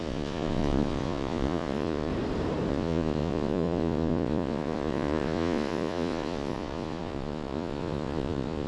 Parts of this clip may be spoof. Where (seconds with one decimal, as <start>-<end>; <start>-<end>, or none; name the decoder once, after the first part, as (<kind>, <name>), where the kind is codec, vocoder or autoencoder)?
0.0-2.1 (vocoder, Vocos); 2.7-8.7